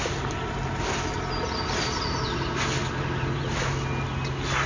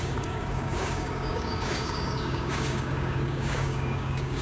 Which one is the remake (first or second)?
second